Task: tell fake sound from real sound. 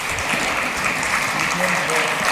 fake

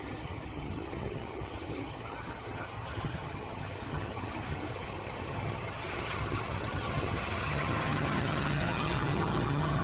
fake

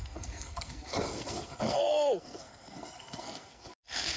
fake